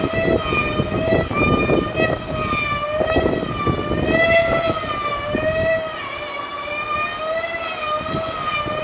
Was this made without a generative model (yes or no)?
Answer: yes